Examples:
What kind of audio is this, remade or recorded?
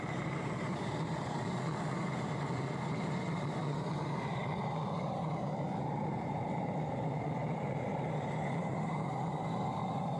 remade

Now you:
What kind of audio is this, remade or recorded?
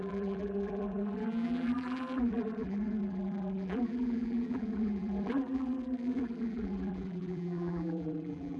remade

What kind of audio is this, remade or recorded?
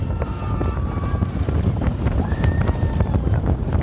remade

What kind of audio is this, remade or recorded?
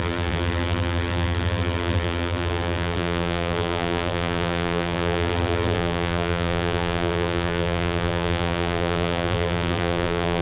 remade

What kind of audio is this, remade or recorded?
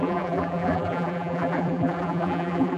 remade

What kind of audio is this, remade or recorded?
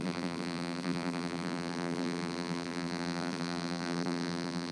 remade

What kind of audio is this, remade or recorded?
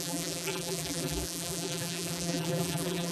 remade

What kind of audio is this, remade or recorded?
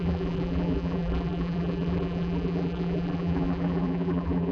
remade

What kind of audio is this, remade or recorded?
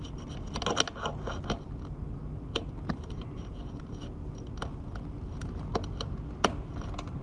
recorded